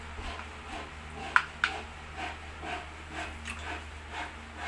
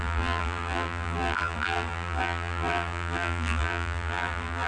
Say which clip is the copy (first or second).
second